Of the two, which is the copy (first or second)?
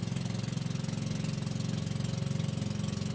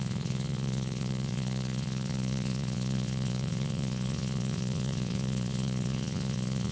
second